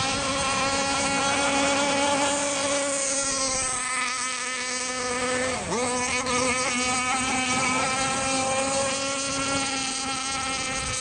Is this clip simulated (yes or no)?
no